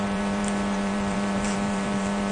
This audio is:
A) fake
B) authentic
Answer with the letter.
A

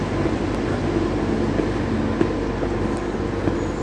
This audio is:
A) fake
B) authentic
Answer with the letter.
B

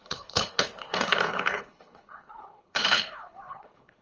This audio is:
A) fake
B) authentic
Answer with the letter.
A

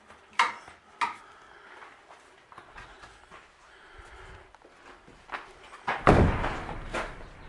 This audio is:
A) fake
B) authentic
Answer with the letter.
B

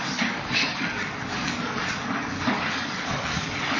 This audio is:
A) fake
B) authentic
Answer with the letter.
A